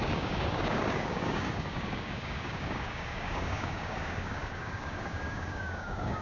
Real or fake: fake